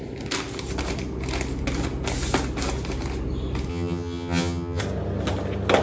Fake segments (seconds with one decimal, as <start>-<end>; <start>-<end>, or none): 3.7-4.8